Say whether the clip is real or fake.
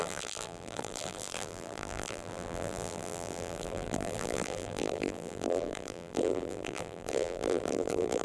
fake